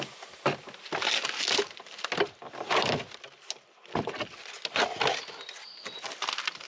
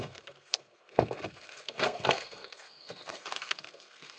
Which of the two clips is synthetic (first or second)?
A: second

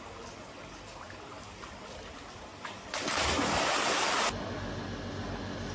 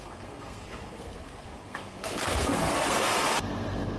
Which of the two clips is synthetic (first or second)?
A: second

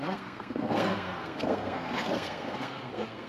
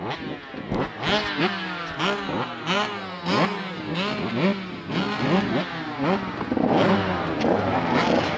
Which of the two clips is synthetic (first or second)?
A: first